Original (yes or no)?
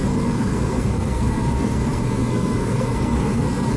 no